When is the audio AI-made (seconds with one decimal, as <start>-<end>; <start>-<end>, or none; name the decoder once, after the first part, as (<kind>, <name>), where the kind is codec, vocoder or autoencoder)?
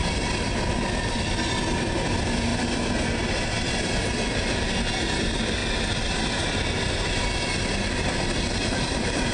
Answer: none